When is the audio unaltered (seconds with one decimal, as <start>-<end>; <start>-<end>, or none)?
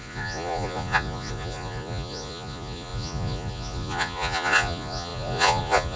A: none